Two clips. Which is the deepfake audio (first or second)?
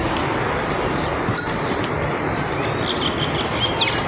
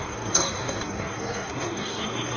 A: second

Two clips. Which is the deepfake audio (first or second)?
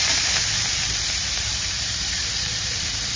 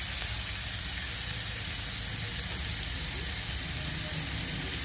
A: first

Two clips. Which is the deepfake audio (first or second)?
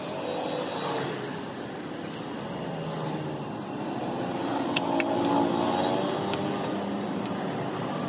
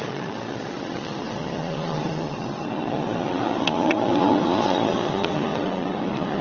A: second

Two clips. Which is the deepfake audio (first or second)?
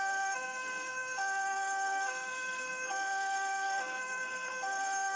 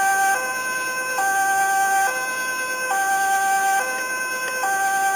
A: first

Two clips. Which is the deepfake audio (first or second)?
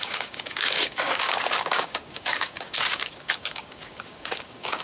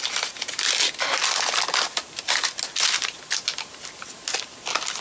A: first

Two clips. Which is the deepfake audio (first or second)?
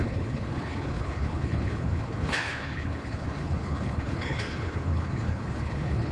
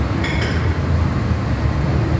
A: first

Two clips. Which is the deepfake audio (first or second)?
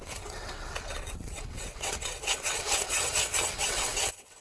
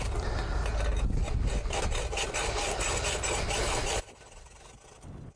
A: first